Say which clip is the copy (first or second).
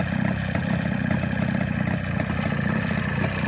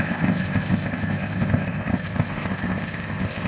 second